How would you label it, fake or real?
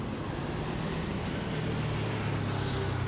real